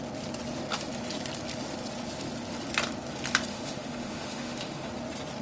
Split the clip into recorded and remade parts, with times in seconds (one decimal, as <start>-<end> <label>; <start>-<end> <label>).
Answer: 0.0-3.5 recorded; 3.5-4.9 remade; 4.9-5.4 recorded